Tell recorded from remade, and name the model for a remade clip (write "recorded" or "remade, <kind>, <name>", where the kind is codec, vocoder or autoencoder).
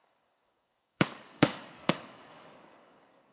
remade, codec, DAC